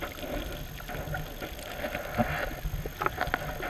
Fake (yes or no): no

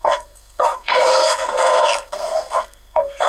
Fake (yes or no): yes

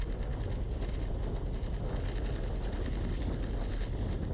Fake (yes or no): no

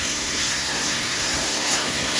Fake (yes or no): yes